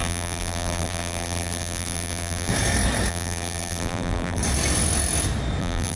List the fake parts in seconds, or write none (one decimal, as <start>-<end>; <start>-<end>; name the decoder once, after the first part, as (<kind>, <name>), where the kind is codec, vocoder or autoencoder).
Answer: 0.0-2.5 (vocoder, BigVGAN v2); 3.1-4.4; 5.6-6.0